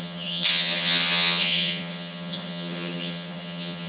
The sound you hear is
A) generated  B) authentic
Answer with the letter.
A